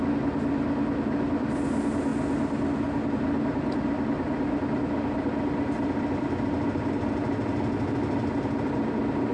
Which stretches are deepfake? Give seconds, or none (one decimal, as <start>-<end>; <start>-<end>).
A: none